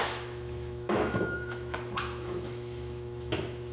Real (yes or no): no